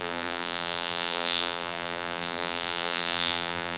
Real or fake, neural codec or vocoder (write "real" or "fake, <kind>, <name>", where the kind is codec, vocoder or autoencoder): fake, vocoder, BigVGAN v2